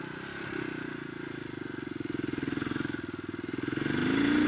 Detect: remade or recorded recorded